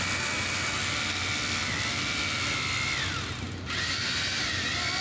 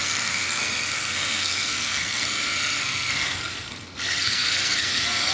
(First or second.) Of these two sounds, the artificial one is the second